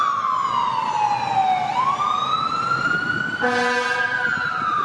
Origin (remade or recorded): recorded